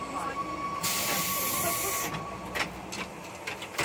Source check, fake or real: fake